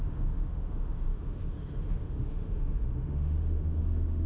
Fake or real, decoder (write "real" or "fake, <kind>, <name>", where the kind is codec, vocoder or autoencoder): fake, autoencoder, DAC-VAE